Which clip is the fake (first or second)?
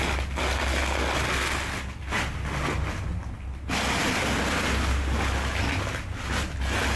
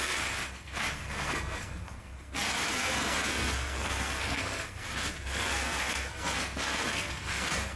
second